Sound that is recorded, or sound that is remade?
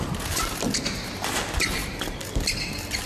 recorded